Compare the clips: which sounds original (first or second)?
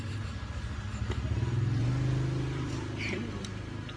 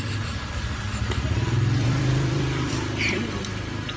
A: first